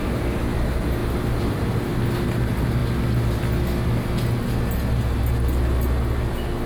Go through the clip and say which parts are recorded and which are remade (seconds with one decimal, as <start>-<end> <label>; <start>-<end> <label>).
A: 0.0-6.7 recorded